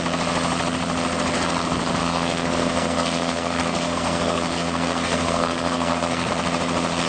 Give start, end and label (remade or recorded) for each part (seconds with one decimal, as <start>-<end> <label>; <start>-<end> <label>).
0.0-2.0 recorded; 2.0-6.3 remade; 6.3-7.1 recorded